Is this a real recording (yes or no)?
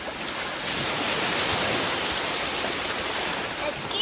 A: yes